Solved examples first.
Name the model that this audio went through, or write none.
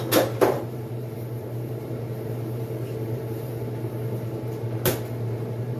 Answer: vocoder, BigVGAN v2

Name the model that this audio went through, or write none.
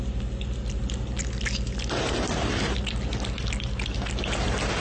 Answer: none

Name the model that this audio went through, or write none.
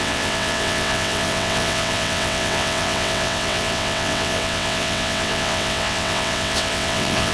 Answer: vocoder, WaveNeXt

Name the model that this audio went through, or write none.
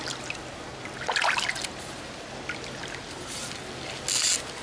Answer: none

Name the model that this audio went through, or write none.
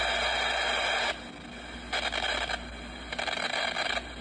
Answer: none